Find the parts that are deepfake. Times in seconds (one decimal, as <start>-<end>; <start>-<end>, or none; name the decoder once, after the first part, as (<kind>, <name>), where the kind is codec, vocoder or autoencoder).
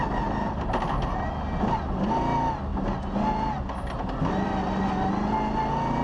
none